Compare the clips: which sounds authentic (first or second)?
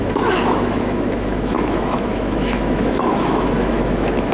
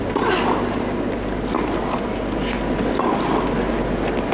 second